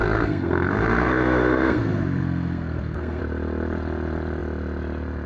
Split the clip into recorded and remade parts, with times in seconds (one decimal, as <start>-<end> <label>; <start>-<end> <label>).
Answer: 0.0-3.2 remade; 3.2-5.3 recorded